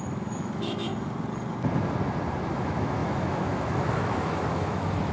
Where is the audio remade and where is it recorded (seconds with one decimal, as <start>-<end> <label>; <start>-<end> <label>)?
0.0-0.9 remade; 0.9-2.5 recorded; 2.5-5.1 remade